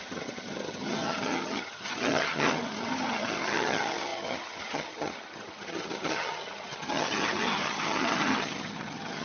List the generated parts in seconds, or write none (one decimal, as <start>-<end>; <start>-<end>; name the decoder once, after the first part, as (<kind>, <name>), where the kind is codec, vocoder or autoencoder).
0.0-9.2 (vocoder, HiFi-GAN)